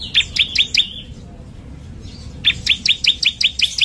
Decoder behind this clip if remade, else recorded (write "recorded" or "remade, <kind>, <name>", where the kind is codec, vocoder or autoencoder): recorded